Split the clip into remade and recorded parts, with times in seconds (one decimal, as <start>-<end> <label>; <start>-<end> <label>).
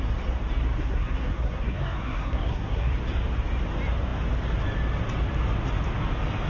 0.0-0.8 recorded; 0.8-2.9 remade; 2.9-6.5 recorded